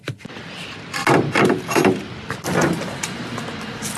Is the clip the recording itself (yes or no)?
yes